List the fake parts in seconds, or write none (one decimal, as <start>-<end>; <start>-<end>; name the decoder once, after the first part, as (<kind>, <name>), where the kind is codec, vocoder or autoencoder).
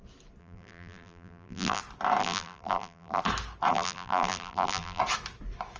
0.4-1.8 (vocoder, BigVGAN v2); 2.2-3.2; 3.7-5.0